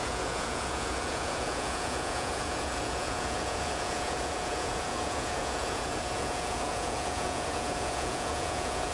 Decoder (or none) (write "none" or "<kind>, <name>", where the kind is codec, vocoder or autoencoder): vocoder, Vocos